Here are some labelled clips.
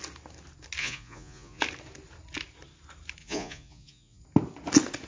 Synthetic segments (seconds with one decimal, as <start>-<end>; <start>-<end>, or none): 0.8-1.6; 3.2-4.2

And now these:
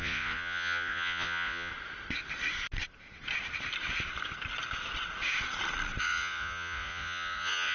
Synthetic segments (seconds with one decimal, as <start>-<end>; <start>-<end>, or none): 0.0-1.7; 6.0-7.7

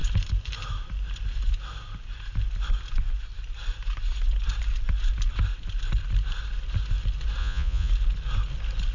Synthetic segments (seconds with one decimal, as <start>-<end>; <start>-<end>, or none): 7.4-7.9